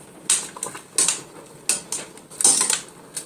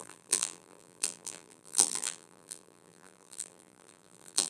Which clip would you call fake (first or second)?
second